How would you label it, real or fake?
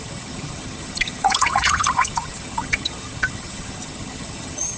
fake